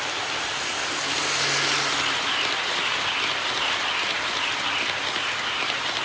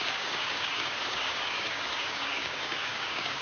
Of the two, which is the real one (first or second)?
first